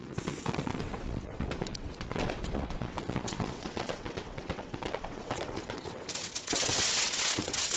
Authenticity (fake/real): fake